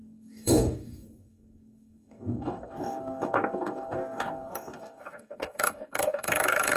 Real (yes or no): no